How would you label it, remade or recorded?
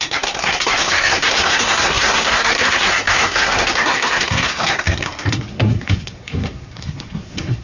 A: remade